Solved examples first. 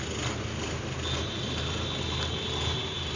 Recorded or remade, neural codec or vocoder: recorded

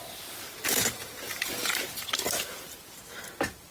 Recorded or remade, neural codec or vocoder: recorded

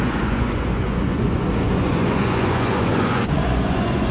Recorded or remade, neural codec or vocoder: remade, vocoder, Vocos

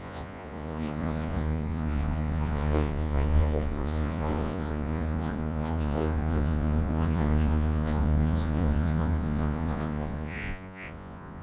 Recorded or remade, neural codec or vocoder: remade, vocoder, Vocos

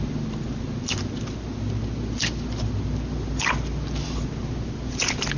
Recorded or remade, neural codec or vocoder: recorded